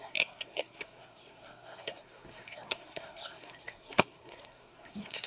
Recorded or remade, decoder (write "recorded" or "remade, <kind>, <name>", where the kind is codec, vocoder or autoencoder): remade, codec, SNAC